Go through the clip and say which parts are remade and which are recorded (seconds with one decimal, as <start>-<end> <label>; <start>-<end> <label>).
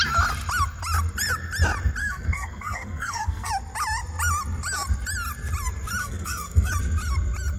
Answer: 0.0-2.0 recorded; 2.0-3.5 remade; 3.5-6.0 recorded; 6.0-6.7 remade; 6.7-7.6 recorded